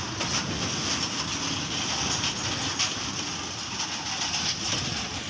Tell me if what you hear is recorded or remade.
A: recorded